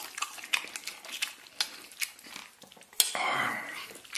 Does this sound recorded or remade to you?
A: recorded